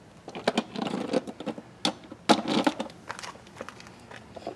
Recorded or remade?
recorded